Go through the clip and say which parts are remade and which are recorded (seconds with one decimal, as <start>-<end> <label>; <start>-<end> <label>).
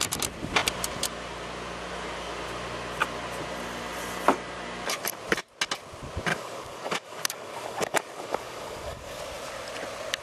0.0-6.3 recorded; 6.3-9.2 remade; 9.2-10.2 recorded